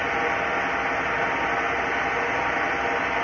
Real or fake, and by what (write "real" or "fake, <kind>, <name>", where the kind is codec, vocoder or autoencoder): real